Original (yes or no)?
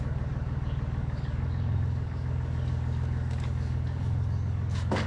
no